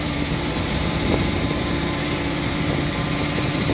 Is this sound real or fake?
fake